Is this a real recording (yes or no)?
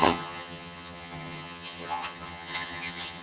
no